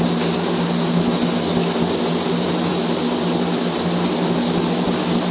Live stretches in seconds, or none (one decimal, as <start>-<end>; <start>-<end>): 0.0-5.3